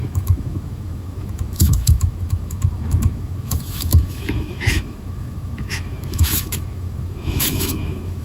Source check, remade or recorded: remade